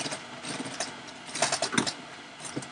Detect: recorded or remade recorded